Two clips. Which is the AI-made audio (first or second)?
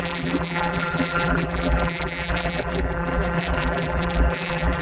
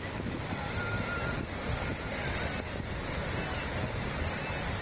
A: first